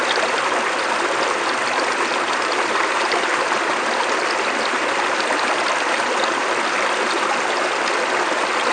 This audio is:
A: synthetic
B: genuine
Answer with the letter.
B